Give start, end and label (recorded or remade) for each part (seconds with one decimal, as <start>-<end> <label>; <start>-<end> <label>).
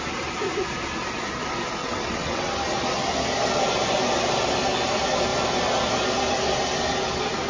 0.0-1.8 recorded; 1.8-2.5 remade; 2.5-7.5 recorded